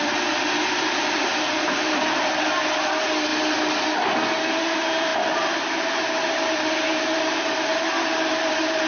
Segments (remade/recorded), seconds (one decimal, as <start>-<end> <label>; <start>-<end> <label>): 0.0-3.3 remade; 3.3-4.6 recorded; 4.6-8.9 remade